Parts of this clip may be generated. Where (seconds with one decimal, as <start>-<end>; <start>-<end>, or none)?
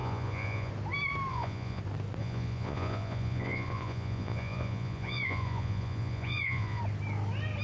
0.0-0.7; 1.3-1.8; 2.2-6.8